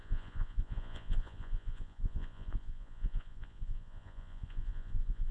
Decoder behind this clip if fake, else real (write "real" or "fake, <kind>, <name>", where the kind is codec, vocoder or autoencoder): fake, vocoder, Vocos